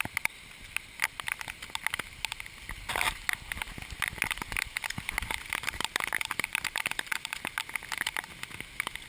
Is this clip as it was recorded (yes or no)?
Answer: yes